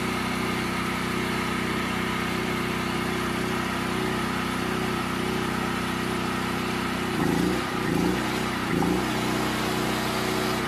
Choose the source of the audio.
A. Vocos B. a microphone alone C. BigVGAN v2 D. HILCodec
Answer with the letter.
B